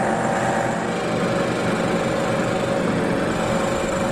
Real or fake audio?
real